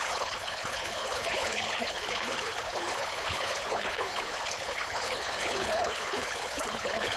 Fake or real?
fake